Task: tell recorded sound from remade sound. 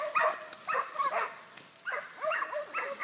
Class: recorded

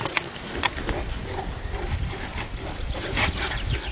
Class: recorded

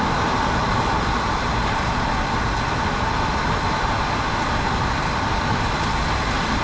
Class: recorded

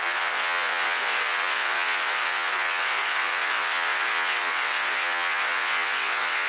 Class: remade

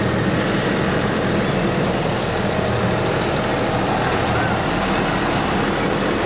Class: recorded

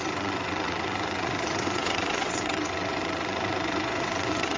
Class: remade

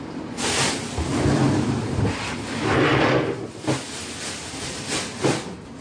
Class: recorded